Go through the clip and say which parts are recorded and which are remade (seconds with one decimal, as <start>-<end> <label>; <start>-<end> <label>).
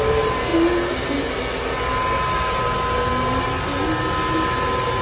0.0-5.0 recorded